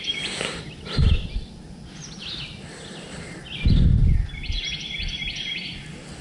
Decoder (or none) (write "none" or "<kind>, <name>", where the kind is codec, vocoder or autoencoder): vocoder, BigVGAN v2